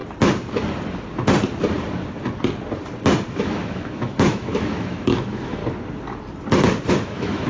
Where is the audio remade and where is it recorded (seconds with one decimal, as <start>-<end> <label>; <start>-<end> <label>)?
0.0-3.3 recorded; 3.3-5.6 remade; 5.6-6.9 recorded; 6.9-7.5 remade